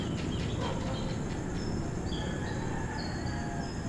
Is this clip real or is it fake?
real